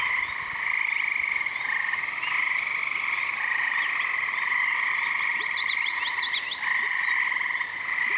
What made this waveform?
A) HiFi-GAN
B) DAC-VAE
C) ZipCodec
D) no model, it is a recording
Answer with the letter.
D